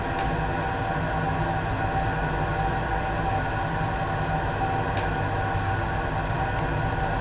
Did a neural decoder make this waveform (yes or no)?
no